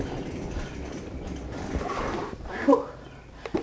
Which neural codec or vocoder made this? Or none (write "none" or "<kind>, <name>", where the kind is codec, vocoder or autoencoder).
none